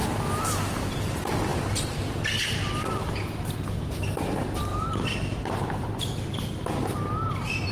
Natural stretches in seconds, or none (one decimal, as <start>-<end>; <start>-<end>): 1.1-4.7; 6.2-7.7